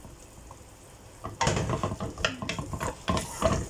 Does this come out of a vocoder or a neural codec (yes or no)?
no